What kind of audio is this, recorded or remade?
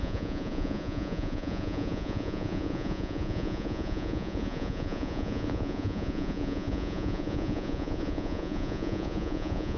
remade